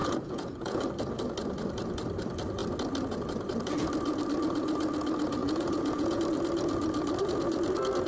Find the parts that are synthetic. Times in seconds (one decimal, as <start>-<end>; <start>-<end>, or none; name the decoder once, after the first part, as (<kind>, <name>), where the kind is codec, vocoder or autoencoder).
0.0-0.8 (vocoder, Vocos); 5.4-6.2